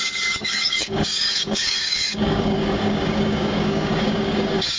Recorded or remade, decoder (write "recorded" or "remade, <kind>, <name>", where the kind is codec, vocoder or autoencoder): remade, codec, DAC